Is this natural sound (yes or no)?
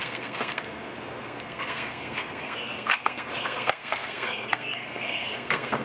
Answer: no